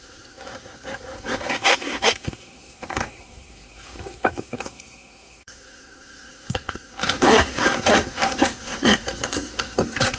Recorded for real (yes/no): no